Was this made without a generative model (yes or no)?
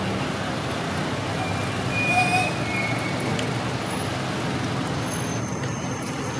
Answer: yes